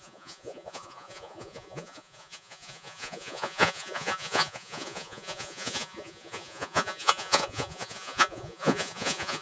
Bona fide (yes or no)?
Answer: no